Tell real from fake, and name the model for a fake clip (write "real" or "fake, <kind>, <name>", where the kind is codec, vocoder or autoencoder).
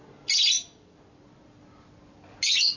real